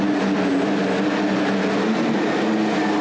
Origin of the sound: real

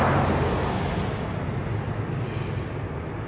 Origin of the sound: real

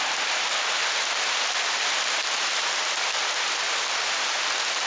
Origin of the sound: real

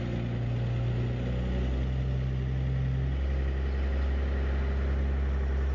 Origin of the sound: real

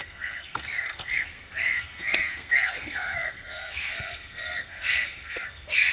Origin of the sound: fake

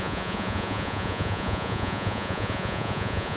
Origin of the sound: fake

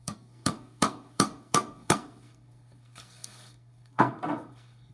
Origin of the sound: fake